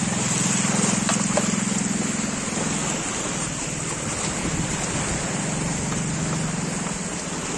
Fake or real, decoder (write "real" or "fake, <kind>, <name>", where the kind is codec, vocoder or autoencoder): real